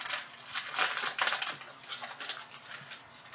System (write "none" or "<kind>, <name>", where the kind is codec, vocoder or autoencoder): none